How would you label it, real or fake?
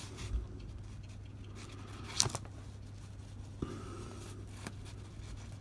real